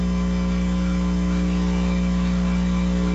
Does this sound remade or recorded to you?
recorded